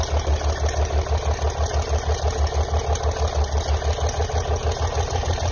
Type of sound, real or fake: real